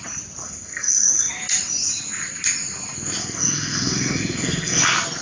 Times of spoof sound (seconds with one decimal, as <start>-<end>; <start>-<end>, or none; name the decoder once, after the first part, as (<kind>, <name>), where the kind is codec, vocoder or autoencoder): 0.4-1.3 (codec, SNAC); 3.2-4.8